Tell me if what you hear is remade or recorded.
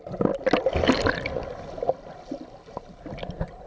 recorded